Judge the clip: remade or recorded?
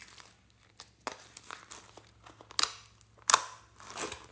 recorded